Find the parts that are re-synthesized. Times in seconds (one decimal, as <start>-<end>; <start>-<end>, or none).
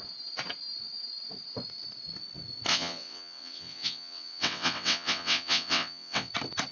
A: 2.7-6.3